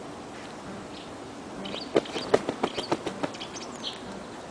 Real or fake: real